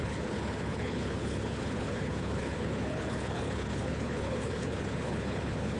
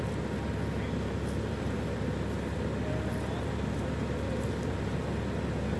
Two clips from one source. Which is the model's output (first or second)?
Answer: first